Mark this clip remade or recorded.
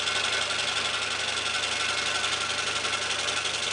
recorded